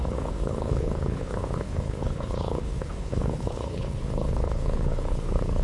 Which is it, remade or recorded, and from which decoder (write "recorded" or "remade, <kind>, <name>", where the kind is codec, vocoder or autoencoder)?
remade, codec, HILCodec